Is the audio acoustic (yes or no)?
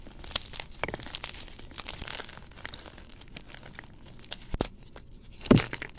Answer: yes